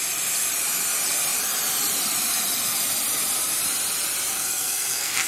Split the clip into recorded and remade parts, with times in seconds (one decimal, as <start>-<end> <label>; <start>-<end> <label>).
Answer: 0.0-4.3 recorded; 4.3-5.3 remade